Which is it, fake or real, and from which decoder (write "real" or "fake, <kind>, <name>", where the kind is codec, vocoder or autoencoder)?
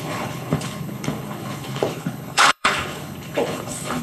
fake, codec, HILCodec